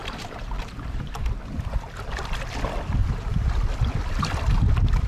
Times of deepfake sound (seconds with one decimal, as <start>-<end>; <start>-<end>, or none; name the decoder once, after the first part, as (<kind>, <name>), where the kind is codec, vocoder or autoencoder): 0.0-1.8 (vocoder, BigVGAN v2); 3.0-3.6